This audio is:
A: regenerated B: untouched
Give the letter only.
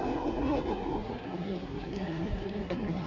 A